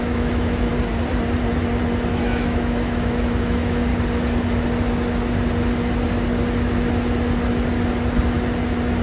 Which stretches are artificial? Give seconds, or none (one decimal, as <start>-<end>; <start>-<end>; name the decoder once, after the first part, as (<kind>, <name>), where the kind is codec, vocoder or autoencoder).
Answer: 0.0-0.7 (autoencoder, DAC-VAE); 2.1-3.9